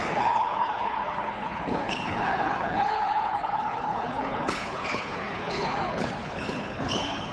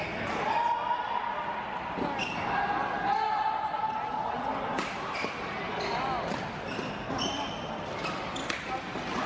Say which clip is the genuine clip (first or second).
second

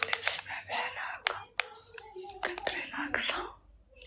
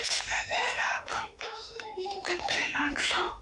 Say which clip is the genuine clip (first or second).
first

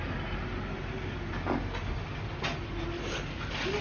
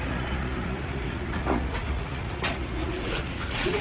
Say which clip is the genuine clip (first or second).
first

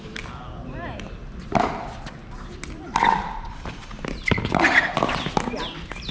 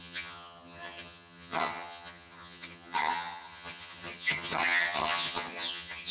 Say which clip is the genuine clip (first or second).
first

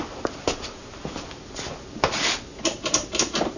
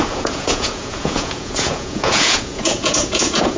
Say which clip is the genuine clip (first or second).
first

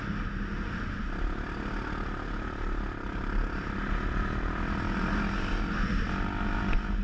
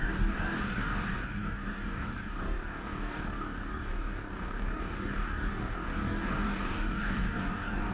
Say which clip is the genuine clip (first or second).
first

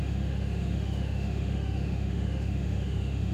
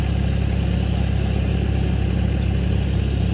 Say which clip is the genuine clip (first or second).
second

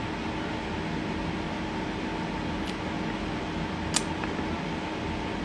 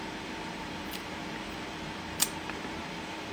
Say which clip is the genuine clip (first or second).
first